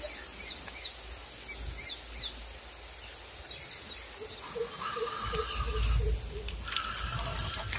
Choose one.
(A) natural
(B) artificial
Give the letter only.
A